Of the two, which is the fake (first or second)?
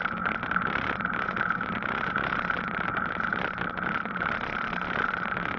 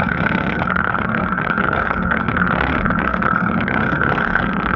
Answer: second